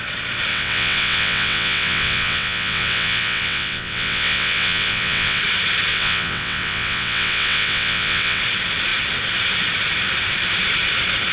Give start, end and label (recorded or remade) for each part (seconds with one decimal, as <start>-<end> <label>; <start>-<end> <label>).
0.0-0.5 recorded; 0.5-5.4 remade; 5.4-5.9 recorded; 5.9-8.4 remade; 8.4-11.3 recorded